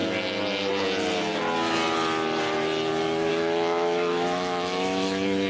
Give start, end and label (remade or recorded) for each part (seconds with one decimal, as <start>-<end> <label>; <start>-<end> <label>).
0.0-3.3 recorded; 3.3-5.5 remade